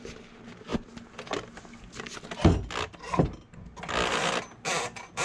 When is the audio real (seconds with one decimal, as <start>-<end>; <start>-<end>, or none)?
0.0-5.2